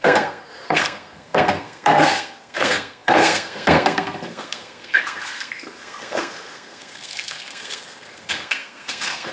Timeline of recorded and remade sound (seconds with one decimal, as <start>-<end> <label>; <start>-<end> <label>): 0.0-9.3 remade